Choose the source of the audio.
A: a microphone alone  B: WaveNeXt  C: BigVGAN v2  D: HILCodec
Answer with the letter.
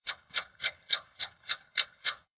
D